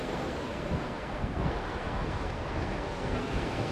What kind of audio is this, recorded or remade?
remade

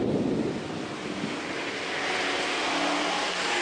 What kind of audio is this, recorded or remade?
recorded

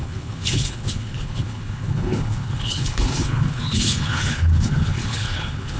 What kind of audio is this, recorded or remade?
remade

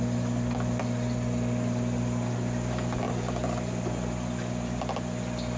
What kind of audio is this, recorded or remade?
recorded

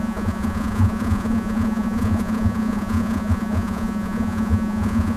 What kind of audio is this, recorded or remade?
remade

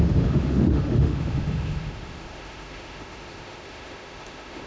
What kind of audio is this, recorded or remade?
remade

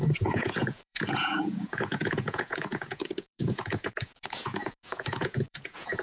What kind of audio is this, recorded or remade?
remade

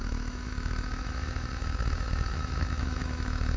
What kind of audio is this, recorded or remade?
remade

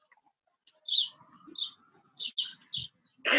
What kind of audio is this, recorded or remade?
recorded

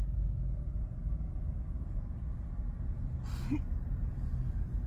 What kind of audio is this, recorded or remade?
recorded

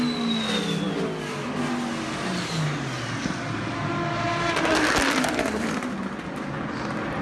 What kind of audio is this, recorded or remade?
recorded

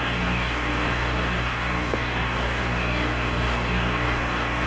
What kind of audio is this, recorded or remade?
remade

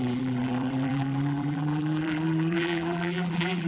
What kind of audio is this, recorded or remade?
remade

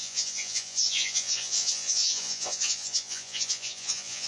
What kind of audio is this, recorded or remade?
remade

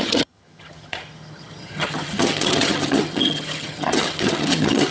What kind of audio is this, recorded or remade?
remade